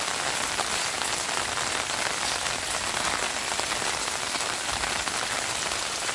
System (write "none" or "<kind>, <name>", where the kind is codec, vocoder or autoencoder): none